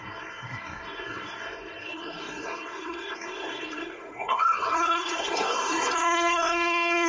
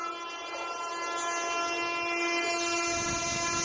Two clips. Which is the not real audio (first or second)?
first